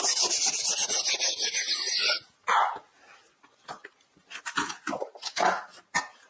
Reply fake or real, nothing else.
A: real